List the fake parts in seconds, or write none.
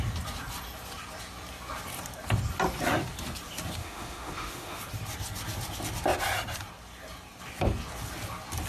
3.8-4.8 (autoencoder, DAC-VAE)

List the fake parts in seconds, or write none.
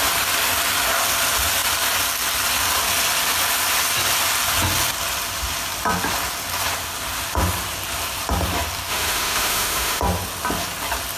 8.9-10.0 (autoencoder, DAC-VAE)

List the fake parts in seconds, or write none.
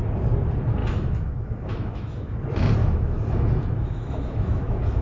0.8-2.4 (autoencoder, DAC-VAE); 2.8-5.0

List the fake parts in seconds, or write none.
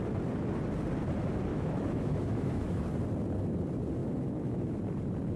1.5-2.8 (autoencoder, DAC-VAE); 4.0-4.8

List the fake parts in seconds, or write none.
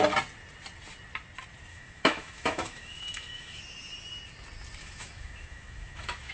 1.7-3.6 (autoencoder, DAC-VAE); 4.8-6.3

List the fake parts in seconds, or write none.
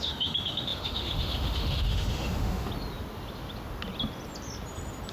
0.0-2.7 (autoencoder, DAC-VAE)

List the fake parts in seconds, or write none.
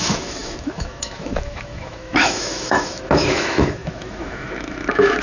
0.0-5.2 (autoencoder, DAC-VAE)